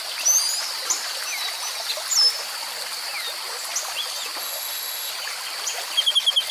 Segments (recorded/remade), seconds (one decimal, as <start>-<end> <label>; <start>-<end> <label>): 0.0-4.4 recorded; 4.4-5.1 remade; 5.1-6.5 recorded